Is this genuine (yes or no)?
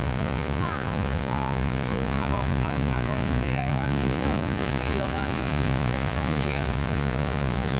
no